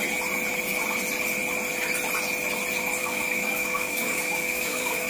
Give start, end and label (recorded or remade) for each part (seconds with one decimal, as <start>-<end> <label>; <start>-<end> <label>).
0.0-3.0 recorded; 3.0-5.1 remade